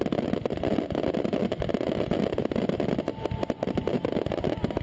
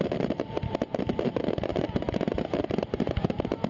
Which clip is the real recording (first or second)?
first